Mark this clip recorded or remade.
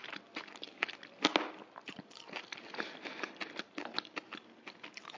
recorded